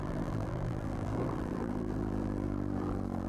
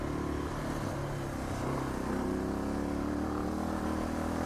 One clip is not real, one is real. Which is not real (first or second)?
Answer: first